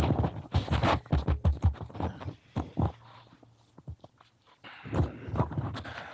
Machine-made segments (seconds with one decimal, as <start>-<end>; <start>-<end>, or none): none